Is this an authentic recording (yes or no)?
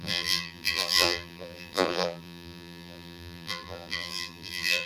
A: no